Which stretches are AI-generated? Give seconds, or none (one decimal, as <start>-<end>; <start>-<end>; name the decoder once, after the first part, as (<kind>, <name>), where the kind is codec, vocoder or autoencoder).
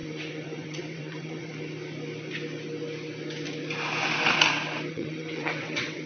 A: 0.0-1.5 (vocoder, WaveNeXt); 4.9-6.1